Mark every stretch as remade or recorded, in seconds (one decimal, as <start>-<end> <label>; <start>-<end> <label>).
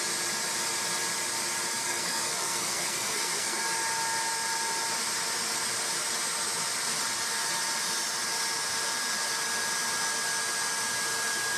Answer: 0.0-1.8 recorded; 1.8-3.6 remade; 3.6-11.6 recorded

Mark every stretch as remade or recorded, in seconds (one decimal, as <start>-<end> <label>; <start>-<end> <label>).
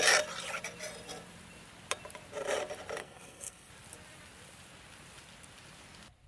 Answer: 0.0-3.0 recorded; 3.0-3.7 remade; 3.7-6.3 recorded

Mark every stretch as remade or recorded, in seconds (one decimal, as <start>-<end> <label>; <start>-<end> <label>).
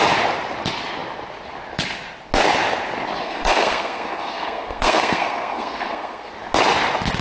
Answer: 0.0-3.2 recorded; 3.2-6.3 remade; 6.3-7.2 recorded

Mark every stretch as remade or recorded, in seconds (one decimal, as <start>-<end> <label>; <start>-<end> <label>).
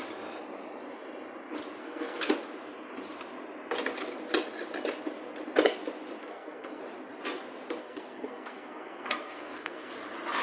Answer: 0.0-1.8 recorded; 1.8-2.3 remade; 2.3-6.2 recorded; 6.2-6.8 remade; 6.8-7.8 recorded; 7.8-9.9 remade; 9.9-10.4 recorded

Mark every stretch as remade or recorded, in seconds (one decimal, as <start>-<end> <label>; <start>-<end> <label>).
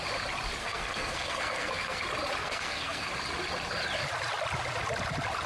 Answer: 0.0-0.6 recorded; 0.6-2.0 remade; 2.0-2.4 recorded; 2.4-3.1 remade; 3.1-5.5 recorded